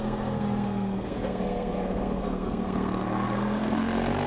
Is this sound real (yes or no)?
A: no